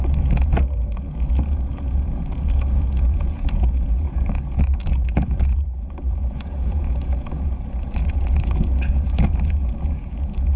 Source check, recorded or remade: remade